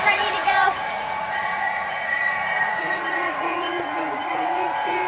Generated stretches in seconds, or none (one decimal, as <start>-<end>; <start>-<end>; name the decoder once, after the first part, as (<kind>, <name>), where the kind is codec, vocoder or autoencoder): 0.0-5.1 (vocoder, Vocos)

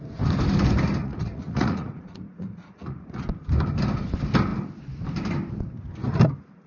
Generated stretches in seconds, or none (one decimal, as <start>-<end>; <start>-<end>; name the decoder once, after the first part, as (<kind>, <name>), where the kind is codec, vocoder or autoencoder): 1.0-3.2 (vocoder, Vocos)

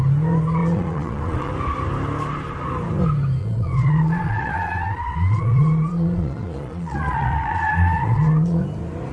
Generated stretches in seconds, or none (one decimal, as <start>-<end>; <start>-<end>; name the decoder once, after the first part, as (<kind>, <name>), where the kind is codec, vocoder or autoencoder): 0.6-1.5 (vocoder, Vocos); 3.4-8.6

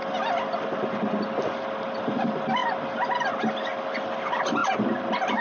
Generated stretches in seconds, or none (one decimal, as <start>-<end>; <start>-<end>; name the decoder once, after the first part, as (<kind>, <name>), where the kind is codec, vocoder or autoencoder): none

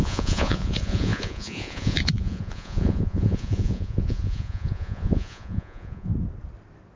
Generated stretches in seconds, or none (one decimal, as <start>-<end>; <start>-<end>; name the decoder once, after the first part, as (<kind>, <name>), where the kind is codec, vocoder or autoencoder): 0.0-6.1 (vocoder, Vocos)

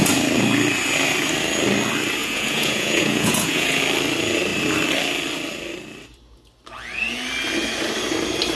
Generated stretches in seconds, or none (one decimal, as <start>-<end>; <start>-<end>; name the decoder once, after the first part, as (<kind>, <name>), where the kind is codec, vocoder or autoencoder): 2.2-3.8 (vocoder, Vocos)

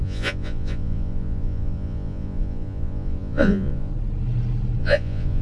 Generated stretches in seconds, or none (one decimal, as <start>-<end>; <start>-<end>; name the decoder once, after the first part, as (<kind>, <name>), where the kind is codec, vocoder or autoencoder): 0.0-3.9 (vocoder, Vocos); 4.8-5.4